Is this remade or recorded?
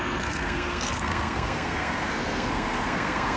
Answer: remade